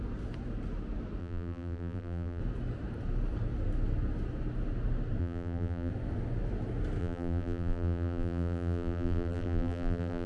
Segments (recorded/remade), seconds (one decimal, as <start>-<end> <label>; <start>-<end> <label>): 0.0-1.2 recorded; 1.2-2.4 remade; 2.4-5.2 recorded; 5.2-5.9 remade; 5.9-7.0 recorded; 7.0-10.3 remade